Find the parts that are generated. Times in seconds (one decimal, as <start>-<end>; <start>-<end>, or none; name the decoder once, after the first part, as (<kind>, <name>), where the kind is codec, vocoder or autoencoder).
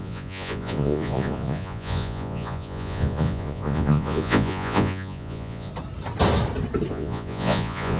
0.0-5.7 (vocoder, Vocos); 6.9-8.0